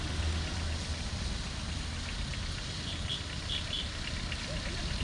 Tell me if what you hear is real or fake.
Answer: fake